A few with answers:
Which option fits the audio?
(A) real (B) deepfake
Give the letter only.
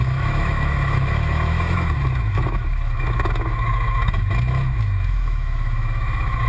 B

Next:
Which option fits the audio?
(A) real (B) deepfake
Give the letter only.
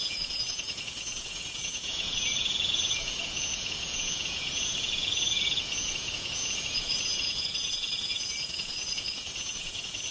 B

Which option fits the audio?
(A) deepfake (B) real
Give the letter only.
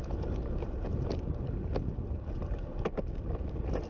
B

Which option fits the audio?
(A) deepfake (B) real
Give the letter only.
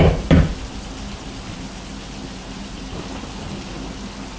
B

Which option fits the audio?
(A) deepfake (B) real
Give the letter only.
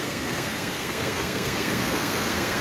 A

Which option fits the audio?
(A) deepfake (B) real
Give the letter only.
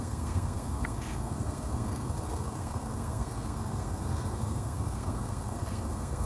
A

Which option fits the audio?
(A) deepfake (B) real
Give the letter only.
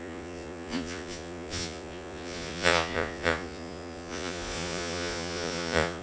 A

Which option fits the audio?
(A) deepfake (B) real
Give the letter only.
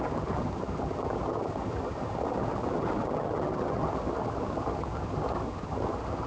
A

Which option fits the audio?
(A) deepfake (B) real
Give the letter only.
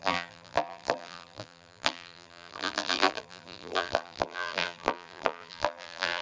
A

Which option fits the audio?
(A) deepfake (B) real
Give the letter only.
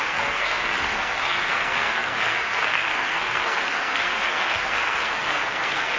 A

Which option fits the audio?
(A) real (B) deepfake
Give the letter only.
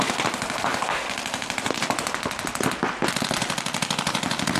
A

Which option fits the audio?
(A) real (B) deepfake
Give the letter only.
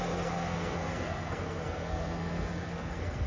B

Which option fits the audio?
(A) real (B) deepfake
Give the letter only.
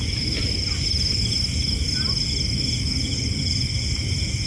A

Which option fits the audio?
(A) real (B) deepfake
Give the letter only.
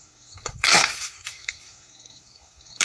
B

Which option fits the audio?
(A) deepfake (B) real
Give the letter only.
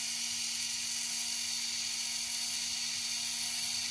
B